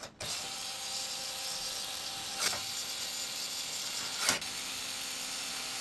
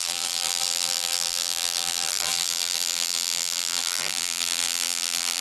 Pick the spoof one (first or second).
second